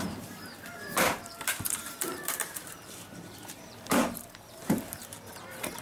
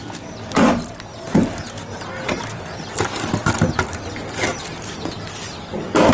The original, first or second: second